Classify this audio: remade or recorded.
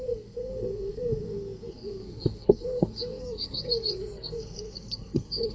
remade